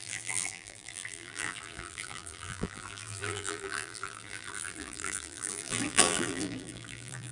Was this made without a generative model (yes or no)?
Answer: no